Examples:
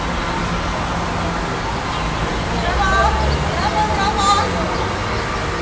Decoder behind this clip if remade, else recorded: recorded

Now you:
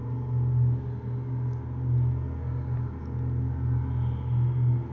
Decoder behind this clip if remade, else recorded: recorded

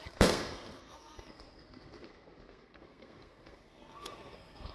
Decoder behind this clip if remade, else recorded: remade, codec, SNAC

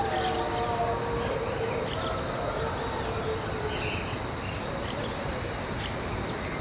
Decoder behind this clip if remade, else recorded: recorded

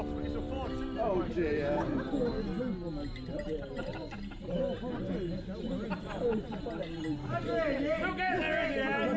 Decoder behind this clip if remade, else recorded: recorded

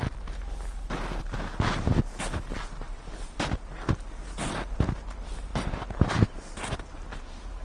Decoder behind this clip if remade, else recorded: recorded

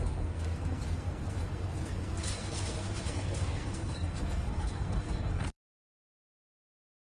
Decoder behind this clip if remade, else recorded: remade, codec, SNAC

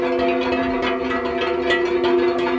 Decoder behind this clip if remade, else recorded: recorded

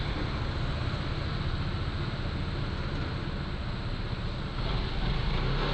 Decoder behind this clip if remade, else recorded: recorded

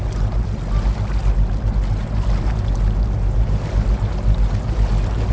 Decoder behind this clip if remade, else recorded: recorded